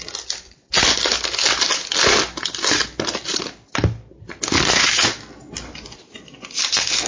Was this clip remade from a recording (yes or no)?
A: no